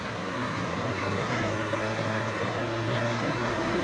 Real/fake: fake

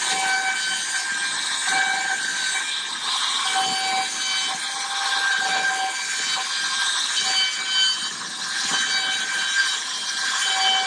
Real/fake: real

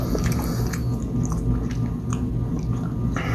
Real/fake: real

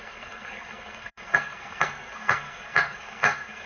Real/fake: fake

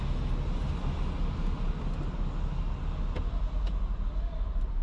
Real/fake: real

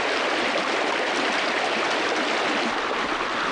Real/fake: real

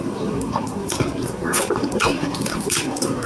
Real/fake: fake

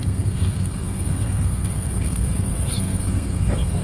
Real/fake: fake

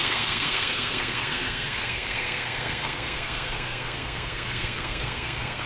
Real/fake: fake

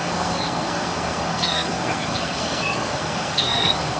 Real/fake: fake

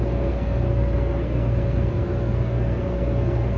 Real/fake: fake